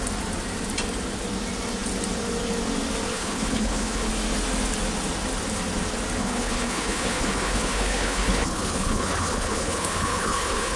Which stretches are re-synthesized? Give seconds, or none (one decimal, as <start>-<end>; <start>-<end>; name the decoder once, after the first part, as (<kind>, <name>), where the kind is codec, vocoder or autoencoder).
3.1-4.1 (codec, HILCodec); 6.2-10.8